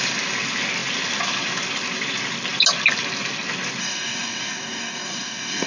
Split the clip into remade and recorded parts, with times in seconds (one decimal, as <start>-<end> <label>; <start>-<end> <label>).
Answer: 0.0-3.8 recorded; 3.8-5.7 remade